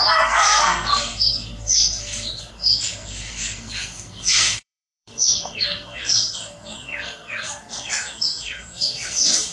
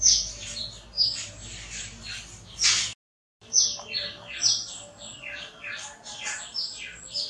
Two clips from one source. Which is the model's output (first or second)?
first